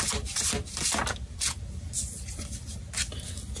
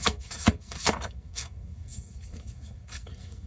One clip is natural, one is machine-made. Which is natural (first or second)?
first